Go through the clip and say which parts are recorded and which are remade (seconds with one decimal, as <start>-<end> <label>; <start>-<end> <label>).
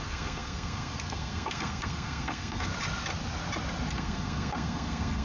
0.0-2.7 remade; 2.7-3.9 recorded; 3.9-5.2 remade